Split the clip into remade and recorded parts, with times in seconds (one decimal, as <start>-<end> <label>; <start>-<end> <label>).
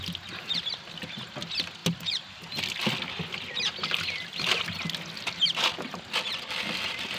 0.0-7.2 recorded